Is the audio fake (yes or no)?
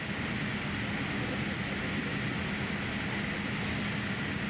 no